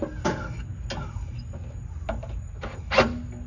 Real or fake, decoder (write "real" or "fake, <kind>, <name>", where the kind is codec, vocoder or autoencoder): real